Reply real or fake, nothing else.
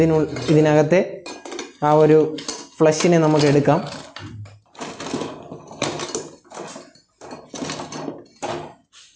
real